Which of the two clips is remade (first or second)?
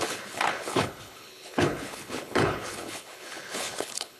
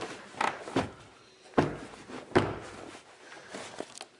first